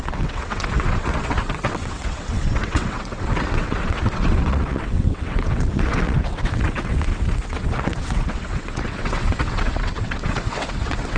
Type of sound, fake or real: fake